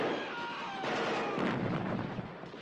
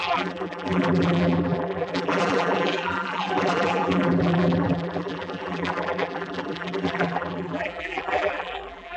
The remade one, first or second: second